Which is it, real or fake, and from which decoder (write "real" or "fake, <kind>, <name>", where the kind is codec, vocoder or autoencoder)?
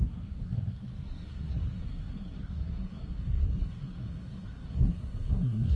fake, codec, SNAC